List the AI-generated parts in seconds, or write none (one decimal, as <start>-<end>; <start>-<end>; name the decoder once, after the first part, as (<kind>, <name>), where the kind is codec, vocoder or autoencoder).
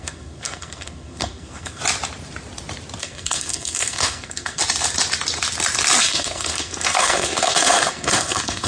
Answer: 0.0-1.8 (codec, SNAC); 3.0-4.6; 6.0-8.7